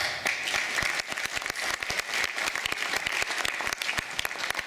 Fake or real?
real